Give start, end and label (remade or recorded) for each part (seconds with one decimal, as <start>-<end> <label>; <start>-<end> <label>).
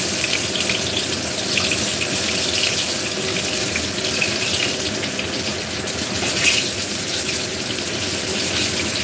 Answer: 0.0-9.0 recorded